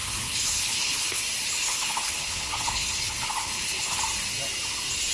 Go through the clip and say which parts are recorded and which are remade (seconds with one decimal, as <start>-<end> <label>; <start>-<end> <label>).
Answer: 0.0-1.2 remade; 1.2-1.6 recorded; 1.6-4.0 remade; 4.0-5.1 recorded